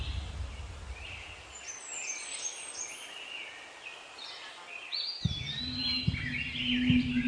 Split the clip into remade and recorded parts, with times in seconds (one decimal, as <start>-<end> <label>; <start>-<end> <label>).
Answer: 0.0-7.3 recorded